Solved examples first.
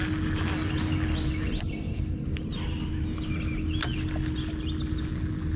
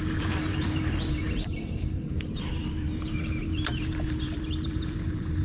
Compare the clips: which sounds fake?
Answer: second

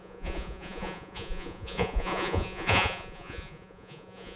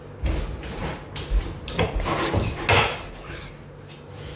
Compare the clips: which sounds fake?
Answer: first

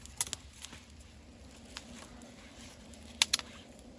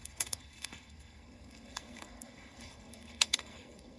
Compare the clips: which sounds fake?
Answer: second